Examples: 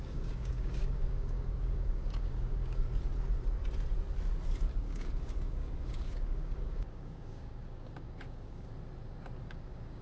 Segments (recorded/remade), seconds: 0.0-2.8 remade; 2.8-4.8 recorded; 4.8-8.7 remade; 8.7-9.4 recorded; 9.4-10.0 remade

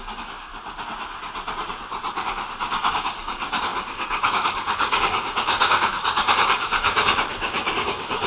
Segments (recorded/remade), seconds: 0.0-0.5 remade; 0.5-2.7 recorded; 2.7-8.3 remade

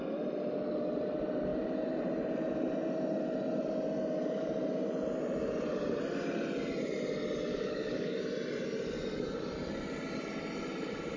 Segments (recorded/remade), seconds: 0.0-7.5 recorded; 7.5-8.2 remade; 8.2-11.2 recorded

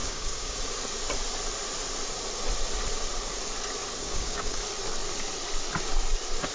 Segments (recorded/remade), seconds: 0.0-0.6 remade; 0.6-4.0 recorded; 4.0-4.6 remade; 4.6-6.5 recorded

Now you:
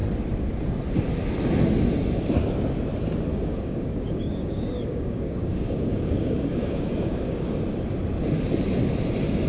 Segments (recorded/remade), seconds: 0.0-3.3 recorded; 3.3-7.6 remade; 7.6-9.5 recorded